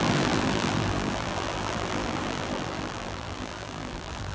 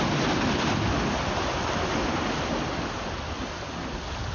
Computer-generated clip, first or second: first